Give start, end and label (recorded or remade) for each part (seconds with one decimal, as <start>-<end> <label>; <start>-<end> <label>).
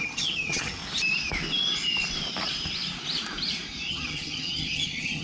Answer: 0.0-0.8 remade; 0.8-3.9 recorded; 3.9-5.2 remade